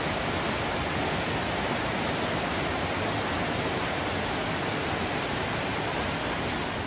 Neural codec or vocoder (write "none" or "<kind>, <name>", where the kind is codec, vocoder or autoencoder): none